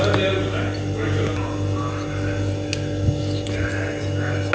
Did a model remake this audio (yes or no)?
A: no